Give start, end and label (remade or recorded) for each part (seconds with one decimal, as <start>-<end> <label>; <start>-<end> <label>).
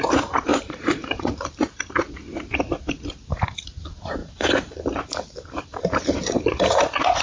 0.0-0.5 recorded; 0.5-1.6 remade; 1.6-4.2 recorded; 4.2-6.8 remade; 6.8-7.2 recorded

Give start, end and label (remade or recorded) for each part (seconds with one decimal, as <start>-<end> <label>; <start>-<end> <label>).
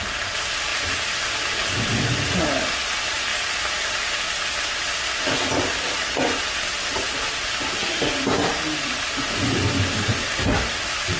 0.0-11.2 recorded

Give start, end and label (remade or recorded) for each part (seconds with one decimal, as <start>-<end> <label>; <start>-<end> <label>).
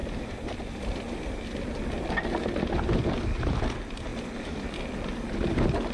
0.0-5.9 recorded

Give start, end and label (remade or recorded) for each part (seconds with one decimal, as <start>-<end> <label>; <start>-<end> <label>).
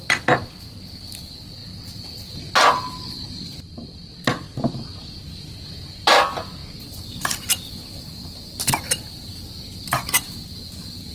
0.0-1.6 recorded; 1.6-2.5 remade; 2.5-11.1 recorded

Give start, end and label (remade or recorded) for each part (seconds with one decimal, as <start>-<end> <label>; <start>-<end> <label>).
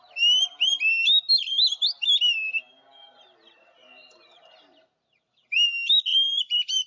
0.0-6.1 recorded; 6.1-6.9 remade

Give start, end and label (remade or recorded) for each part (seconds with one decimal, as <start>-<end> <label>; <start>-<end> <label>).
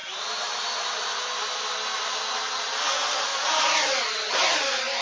0.0-3.3 recorded; 3.3-4.3 remade; 4.3-5.0 recorded